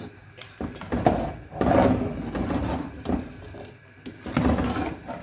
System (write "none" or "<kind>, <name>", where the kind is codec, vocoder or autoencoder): none